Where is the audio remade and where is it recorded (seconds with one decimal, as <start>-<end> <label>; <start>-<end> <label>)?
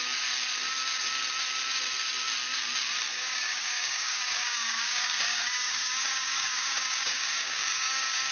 0.0-3.1 recorded; 3.1-8.3 remade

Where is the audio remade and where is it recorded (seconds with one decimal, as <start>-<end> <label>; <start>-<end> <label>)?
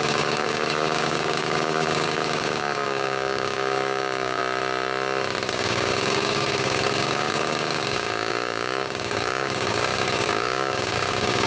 0.0-4.4 remade; 4.4-5.5 recorded; 5.5-11.5 remade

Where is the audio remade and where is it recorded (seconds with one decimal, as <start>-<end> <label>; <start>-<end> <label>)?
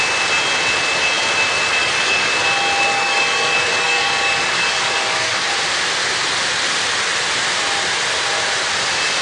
0.0-1.8 recorded; 1.8-2.3 remade; 2.3-2.9 recorded; 2.9-5.4 remade; 5.4-9.2 recorded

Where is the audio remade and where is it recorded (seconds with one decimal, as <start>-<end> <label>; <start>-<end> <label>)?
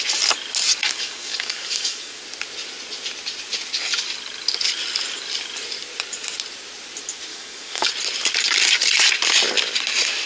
0.0-0.8 recorded; 0.8-2.2 remade; 2.2-7.3 recorded; 7.3-7.9 remade; 7.9-10.3 recorded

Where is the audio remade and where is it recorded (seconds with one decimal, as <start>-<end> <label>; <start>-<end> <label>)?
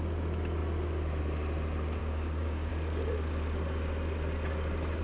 0.0-2.0 recorded; 2.0-2.7 remade; 2.7-5.0 recorded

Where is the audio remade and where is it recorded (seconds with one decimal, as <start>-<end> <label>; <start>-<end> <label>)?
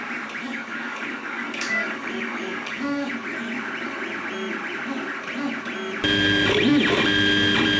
0.0-0.4 recorded; 0.4-3.1 remade; 3.1-7.8 recorded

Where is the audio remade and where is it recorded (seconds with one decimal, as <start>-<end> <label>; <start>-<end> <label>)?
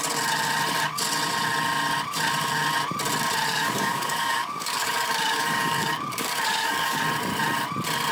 0.0-3.5 recorded; 3.5-7.0 remade; 7.0-8.1 recorded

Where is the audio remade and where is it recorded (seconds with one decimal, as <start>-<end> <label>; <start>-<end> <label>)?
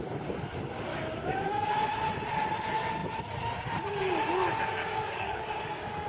0.0-0.9 recorded; 0.9-1.9 remade; 1.9-4.8 recorded; 4.8-6.1 remade